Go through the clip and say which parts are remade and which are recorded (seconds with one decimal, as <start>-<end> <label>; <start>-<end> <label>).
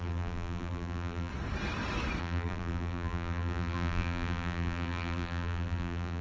0.0-1.3 remade; 1.3-2.2 recorded; 2.2-6.2 remade